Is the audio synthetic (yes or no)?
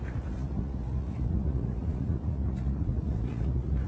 yes